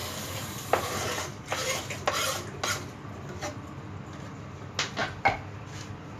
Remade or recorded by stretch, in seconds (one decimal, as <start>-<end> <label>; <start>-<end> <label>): 0.0-6.2 recorded